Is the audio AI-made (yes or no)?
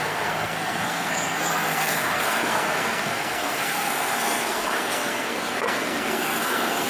yes